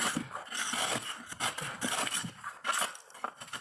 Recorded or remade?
recorded